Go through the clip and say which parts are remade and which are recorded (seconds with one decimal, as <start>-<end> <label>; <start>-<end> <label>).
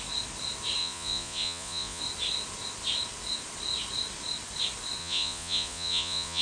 0.0-0.8 recorded; 0.8-2.0 remade; 2.0-5.0 recorded; 5.0-6.4 remade